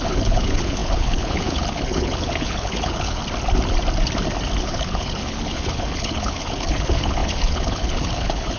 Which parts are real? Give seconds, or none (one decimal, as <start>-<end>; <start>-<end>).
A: 3.2-4.6